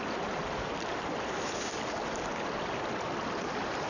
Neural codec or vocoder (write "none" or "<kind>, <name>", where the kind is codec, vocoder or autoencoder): none